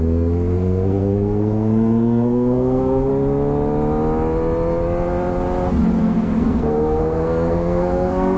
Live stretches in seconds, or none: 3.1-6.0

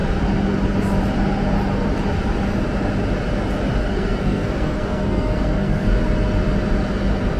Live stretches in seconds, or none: 0.0-3.8; 5.9-7.4

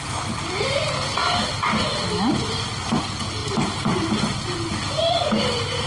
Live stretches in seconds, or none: 0.0-3.4; 4.1-5.9